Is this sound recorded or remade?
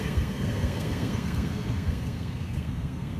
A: remade